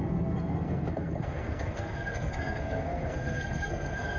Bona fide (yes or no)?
no